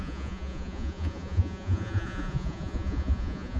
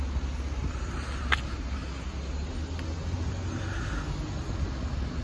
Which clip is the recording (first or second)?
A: second